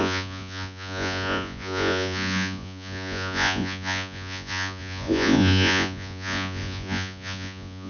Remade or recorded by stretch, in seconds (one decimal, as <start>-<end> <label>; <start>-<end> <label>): 0.0-7.9 remade